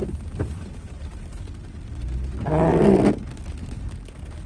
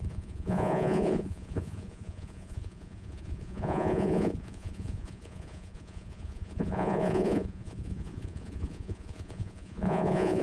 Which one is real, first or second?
first